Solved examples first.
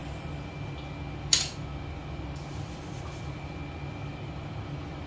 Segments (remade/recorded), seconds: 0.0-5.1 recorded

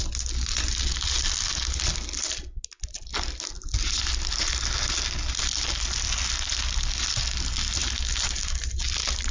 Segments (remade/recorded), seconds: 0.0-9.3 recorded

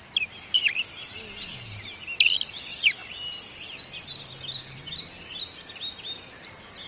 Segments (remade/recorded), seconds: 0.0-6.9 recorded

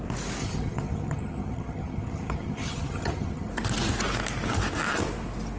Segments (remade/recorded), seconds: 0.0-0.4 recorded; 0.4-3.5 remade; 3.5-5.6 recorded

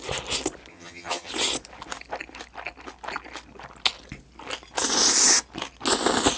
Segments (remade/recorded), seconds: 0.0-0.7 recorded; 0.7-1.3 remade; 1.3-6.4 recorded

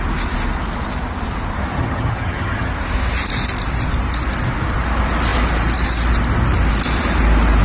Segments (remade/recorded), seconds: 0.0-1.8 recorded; 1.8-2.7 remade; 2.7-7.6 recorded

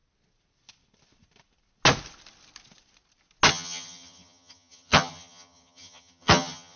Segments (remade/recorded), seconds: 0.0-3.5 recorded; 3.5-6.8 remade

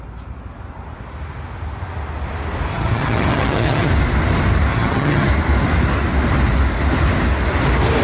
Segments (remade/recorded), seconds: 0.0-2.7 recorded; 2.7-3.9 remade; 3.9-4.7 recorded; 4.7-5.3 remade; 5.3-8.0 recorded